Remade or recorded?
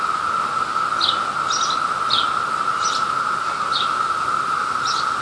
recorded